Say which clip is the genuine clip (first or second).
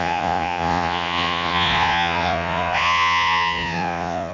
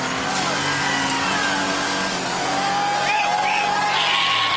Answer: second